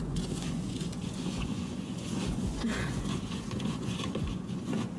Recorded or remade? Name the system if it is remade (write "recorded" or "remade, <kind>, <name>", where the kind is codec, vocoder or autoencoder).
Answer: remade, vocoder, Vocos